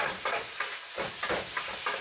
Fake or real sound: real